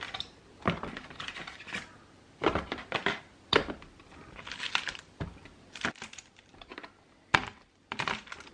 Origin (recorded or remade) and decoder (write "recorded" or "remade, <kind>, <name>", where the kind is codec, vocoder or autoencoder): remade, vocoder, BigVGAN v2